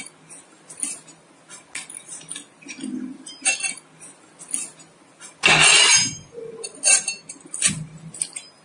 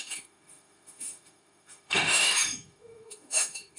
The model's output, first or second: second